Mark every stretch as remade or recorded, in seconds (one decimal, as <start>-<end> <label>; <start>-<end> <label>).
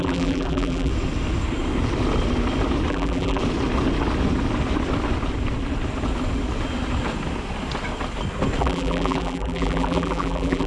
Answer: 0.0-0.9 remade; 0.9-2.9 recorded; 2.9-3.4 remade; 3.4-8.6 recorded; 8.6-10.7 remade